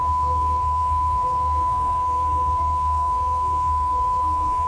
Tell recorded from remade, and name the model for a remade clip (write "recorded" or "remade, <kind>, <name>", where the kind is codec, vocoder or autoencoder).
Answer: remade, codec, SNAC